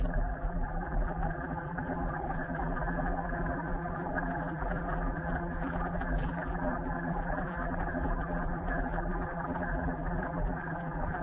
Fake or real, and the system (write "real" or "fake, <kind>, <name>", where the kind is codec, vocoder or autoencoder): fake, vocoder, BigVGAN v2